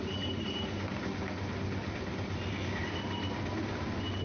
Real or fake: real